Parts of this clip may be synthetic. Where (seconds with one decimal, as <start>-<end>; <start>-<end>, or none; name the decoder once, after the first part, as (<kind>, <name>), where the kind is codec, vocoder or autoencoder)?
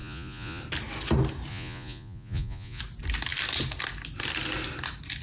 0.0-0.6 (vocoder, Vocos); 1.5-2.8